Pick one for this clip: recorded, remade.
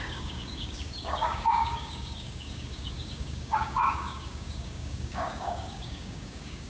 remade